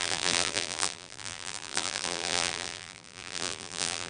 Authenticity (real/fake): fake